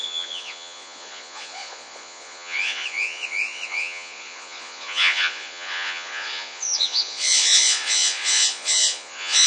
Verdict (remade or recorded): remade